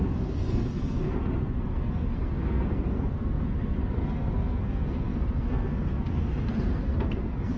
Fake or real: fake